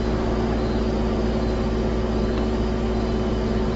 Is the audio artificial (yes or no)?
no